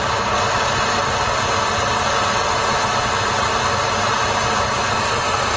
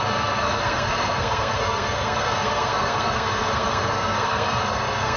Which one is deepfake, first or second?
second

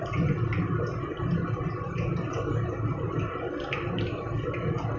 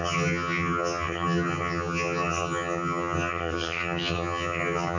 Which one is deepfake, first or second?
second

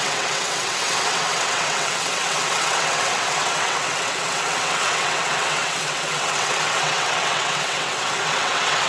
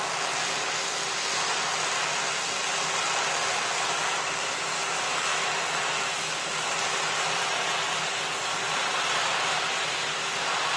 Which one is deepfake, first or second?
first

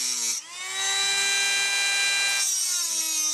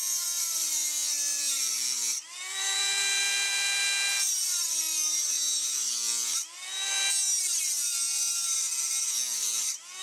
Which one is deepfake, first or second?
second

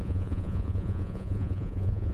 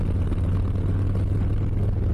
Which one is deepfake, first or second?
first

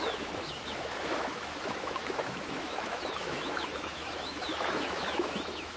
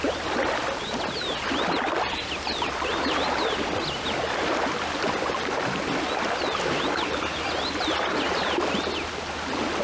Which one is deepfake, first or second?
first